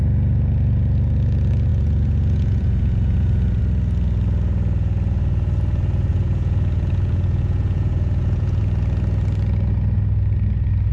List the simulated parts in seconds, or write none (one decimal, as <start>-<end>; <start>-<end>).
1.7-3.6; 6.1-8.6